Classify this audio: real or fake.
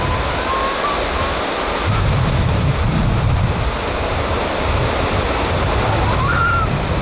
real